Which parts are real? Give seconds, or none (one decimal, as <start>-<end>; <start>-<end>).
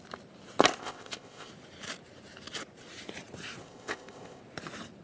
0.0-0.8; 1.5-3.6; 4.4-5.0